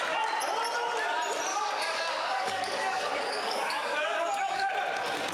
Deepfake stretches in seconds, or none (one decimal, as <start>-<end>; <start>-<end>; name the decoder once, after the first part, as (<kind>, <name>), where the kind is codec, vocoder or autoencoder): 1.5-4.7 (codec, DAC)